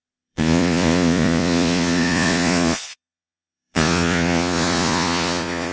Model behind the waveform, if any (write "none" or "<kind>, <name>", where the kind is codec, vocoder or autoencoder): vocoder, Vocos